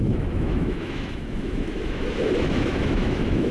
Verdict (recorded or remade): remade